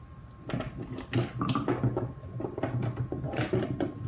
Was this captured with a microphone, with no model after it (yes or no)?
yes